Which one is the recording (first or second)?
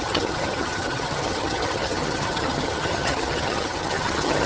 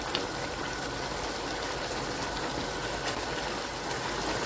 second